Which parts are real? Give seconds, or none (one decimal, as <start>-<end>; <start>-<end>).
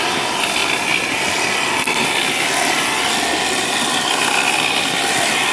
0.0-5.5